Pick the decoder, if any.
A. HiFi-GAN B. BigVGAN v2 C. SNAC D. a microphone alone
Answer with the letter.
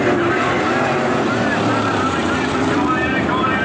B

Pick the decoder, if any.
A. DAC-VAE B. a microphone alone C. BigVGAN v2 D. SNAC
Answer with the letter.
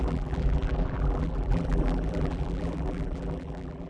C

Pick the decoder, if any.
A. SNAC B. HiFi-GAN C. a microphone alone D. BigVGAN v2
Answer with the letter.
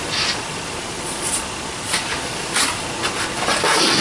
C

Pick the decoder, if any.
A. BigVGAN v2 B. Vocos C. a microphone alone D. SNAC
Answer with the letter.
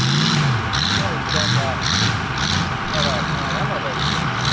C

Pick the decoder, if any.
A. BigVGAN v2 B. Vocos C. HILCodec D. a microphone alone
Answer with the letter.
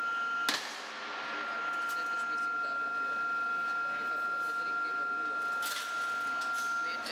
D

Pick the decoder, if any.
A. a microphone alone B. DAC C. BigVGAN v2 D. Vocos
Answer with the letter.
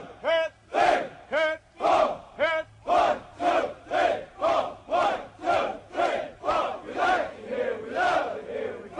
A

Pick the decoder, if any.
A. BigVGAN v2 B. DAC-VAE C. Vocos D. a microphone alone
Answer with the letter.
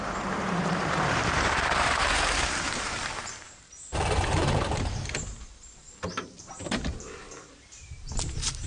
A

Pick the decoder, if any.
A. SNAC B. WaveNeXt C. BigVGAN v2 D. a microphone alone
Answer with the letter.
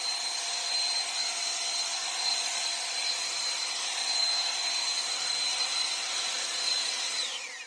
C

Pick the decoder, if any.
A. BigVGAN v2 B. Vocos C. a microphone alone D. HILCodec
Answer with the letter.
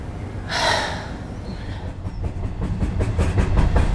C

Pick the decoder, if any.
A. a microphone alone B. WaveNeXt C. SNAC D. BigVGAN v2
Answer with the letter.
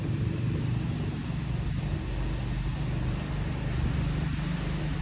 A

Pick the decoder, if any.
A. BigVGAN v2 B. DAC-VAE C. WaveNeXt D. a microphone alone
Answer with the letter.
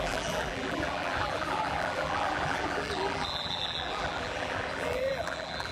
A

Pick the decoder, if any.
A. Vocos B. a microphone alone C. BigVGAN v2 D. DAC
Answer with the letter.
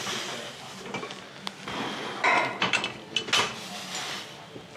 B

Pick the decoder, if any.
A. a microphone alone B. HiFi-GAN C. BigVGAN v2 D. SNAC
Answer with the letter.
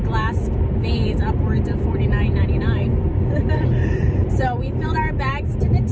C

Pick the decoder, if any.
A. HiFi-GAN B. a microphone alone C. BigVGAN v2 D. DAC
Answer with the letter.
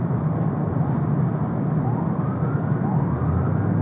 B